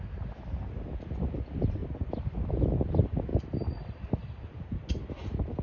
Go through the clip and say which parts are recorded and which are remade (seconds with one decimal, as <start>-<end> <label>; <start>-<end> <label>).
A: 0.0-5.6 recorded